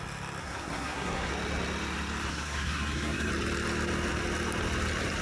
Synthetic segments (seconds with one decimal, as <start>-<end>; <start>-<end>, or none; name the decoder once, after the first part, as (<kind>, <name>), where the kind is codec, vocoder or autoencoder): 0.4-1.3 (codec, SNAC); 2.3-3.3